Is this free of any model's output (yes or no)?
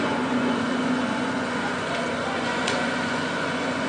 no